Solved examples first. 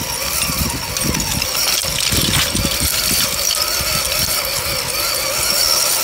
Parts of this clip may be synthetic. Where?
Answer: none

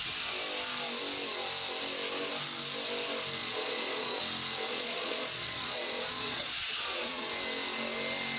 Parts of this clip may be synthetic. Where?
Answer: 3.4-4.2 (vocoder, Vocos); 4.7-7.3

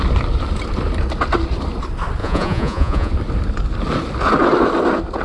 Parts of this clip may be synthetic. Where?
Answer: 2.2-3.1 (vocoder, Vocos)

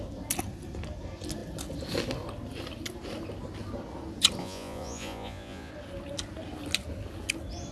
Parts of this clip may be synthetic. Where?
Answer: 4.4-5.7 (vocoder, Vocos)

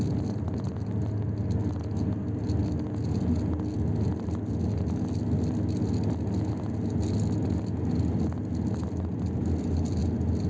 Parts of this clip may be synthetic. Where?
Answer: none